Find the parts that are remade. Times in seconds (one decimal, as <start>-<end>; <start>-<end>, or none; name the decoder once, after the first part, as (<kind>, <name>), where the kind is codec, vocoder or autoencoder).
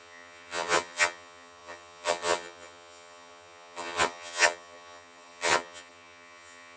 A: 0.0-6.8 (vocoder, HiFi-GAN)